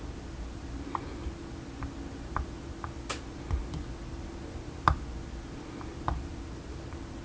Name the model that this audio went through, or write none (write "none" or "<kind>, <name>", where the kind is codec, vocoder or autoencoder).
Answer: none